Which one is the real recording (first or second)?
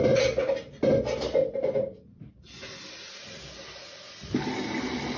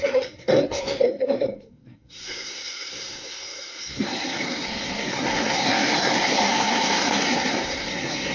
first